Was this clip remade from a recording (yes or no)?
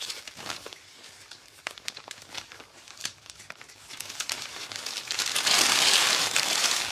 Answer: yes